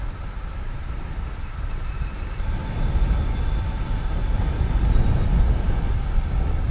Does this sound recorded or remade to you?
recorded